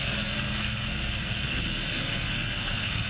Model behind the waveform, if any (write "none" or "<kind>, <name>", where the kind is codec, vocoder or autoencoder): codec, SNAC